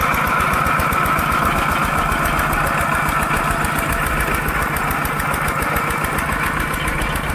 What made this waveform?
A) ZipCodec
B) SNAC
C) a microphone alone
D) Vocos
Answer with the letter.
C